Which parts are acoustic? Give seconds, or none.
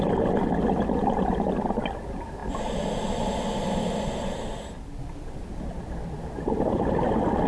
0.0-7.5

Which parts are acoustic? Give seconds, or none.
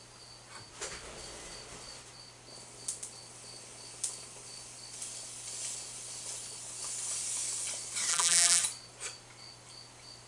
0.0-8.1; 8.6-10.3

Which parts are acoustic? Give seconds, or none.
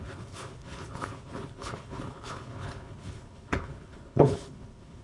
none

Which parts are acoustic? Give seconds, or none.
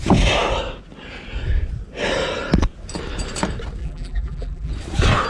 0.0-3.8; 4.7-5.3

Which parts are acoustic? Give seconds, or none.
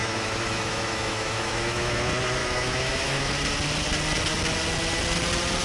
2.0-2.4; 3.3-5.6